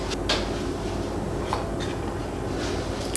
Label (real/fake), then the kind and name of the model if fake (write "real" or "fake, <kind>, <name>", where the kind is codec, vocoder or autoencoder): real